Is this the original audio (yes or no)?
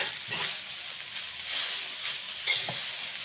yes